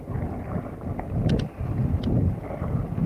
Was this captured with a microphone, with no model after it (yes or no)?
no